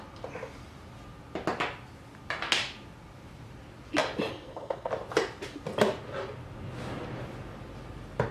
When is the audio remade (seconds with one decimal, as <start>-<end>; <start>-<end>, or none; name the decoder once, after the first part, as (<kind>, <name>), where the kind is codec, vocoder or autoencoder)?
4.3-4.9 (codec, SNAC)